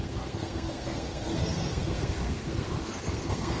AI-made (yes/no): yes